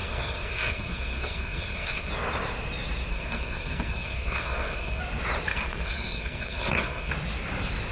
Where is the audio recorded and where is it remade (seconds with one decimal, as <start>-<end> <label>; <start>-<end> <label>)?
0.0-2.1 remade; 2.1-3.1 recorded; 3.1-5.0 remade; 5.0-5.5 recorded; 5.5-7.1 remade; 7.1-7.9 recorded